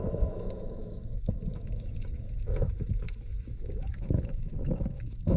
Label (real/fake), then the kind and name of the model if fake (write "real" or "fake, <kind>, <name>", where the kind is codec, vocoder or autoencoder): fake, autoencoder, DAC-VAE